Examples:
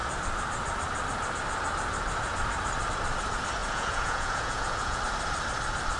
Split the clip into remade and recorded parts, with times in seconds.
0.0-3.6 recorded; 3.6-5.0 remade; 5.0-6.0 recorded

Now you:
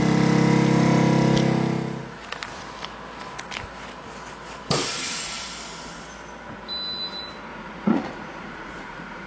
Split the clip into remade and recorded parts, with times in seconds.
0.0-7.5 recorded; 7.5-9.3 remade

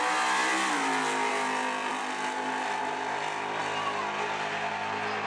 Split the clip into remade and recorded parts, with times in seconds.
0.0-5.3 recorded